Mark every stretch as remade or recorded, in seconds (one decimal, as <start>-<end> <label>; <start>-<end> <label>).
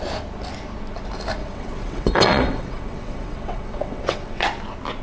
0.0-1.4 recorded; 1.4-4.4 remade; 4.4-5.0 recorded